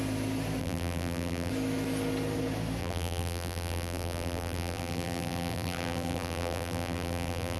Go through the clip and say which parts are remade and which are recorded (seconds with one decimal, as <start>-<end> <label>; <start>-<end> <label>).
0.0-0.6 recorded; 0.6-1.5 remade; 1.5-2.8 recorded; 2.8-7.6 remade